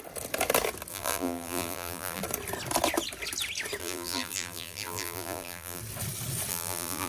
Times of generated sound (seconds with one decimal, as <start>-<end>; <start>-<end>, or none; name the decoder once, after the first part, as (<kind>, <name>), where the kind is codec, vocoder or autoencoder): 0.9-2.2 (vocoder, BigVGAN v2); 3.8-5.8; 6.5-7.1